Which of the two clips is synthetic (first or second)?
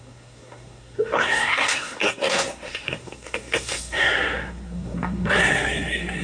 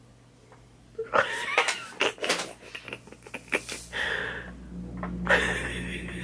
first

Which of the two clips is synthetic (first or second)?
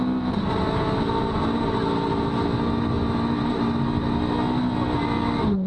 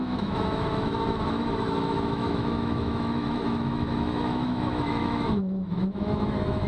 second